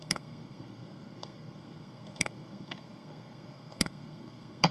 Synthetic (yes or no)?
yes